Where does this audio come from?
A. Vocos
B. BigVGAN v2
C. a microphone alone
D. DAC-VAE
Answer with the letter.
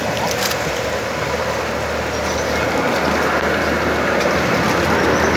C